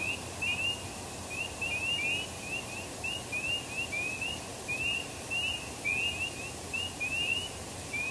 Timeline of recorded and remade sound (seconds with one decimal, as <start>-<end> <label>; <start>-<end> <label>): 0.0-8.1 recorded